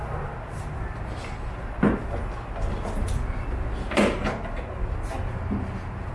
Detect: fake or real real